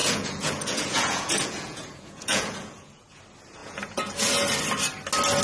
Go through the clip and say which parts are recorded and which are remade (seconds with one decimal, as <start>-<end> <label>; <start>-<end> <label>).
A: 0.0-3.2 remade; 3.2-3.6 recorded; 3.6-4.3 remade; 4.3-5.4 recorded